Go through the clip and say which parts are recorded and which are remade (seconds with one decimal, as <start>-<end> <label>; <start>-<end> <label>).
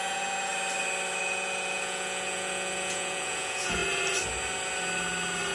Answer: 0.0-0.5 remade; 0.5-1.2 recorded; 1.2-3.8 remade; 3.8-5.5 recorded